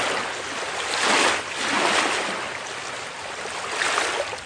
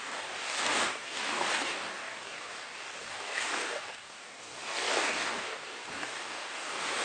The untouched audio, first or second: first